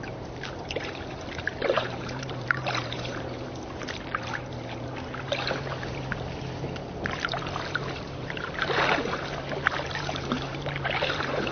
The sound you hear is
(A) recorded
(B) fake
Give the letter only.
B